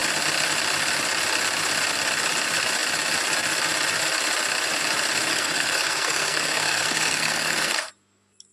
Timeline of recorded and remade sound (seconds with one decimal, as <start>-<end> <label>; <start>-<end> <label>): 0.0-5.3 recorded; 5.3-7.9 remade; 7.9-8.5 recorded

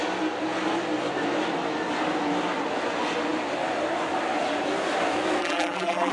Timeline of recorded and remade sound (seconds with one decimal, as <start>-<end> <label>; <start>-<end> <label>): 0.0-5.4 recorded; 5.4-6.1 remade